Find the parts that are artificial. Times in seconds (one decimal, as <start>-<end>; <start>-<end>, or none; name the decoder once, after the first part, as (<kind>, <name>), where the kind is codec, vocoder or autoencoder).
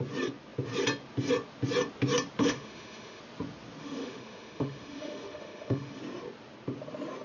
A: 2.4-3.2 (autoencoder, DAC-VAE); 3.8-6.0